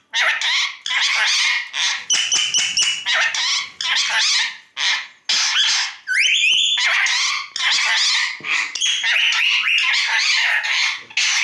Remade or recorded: recorded